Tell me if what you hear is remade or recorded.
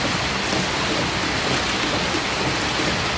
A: recorded